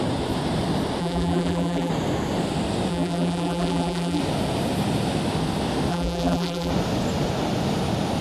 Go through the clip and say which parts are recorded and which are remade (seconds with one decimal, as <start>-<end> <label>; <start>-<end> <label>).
0.0-1.0 recorded; 1.0-1.9 remade; 1.9-2.9 recorded; 2.9-4.2 remade; 4.2-5.9 recorded; 5.9-6.7 remade; 6.7-8.2 recorded